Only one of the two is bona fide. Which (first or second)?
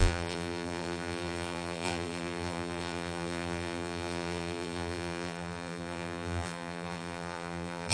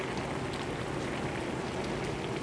second